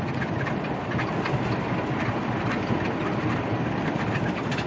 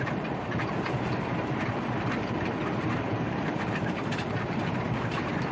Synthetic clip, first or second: second